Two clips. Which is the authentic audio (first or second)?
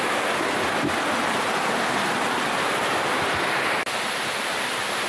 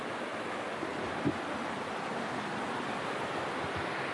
first